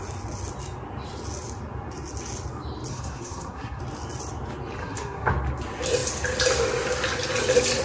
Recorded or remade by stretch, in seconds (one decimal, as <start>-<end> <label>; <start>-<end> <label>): 0.0-2.9 recorded; 2.9-3.8 remade; 3.8-4.8 recorded; 4.8-5.3 remade; 5.3-7.8 recorded

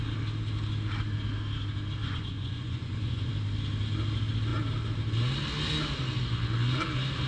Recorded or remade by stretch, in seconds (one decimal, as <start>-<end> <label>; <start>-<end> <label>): 0.0-2.0 recorded; 2.0-3.3 remade; 3.3-7.3 recorded

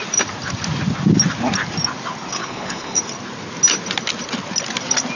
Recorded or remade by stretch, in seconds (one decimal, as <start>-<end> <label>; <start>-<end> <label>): 0.0-2.4 recorded; 2.4-3.0 remade; 3.0-5.2 recorded

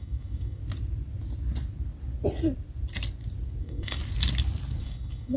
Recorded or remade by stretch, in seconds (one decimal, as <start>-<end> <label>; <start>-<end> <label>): 0.0-0.6 remade; 0.6-3.6 recorded; 3.6-4.0 remade; 4.0-4.8 recorded; 4.8-5.4 remade

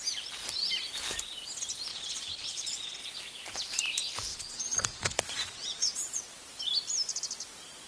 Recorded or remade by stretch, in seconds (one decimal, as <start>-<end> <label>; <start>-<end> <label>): 0.0-1.9 recorded; 1.9-3.0 remade; 3.0-4.3 recorded; 4.3-6.2 remade; 6.2-7.9 recorded

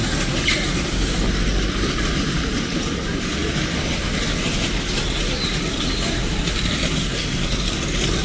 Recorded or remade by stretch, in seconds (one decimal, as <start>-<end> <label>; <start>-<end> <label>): 0.0-1.7 recorded; 1.7-3.4 remade; 3.4-8.2 recorded

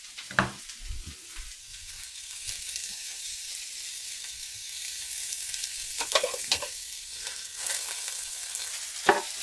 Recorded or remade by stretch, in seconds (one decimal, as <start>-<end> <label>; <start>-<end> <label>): 0.0-1.6 recorded; 1.6-3.5 remade; 3.5-3.9 recorded; 3.9-8.7 remade; 8.7-9.4 recorded

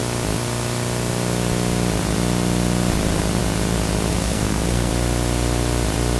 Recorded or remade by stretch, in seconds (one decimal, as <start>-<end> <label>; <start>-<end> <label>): 0.0-4.1 recorded; 4.1-4.9 remade; 4.9-6.2 recorded